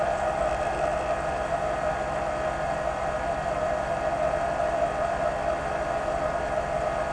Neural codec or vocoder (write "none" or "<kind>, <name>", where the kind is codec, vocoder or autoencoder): none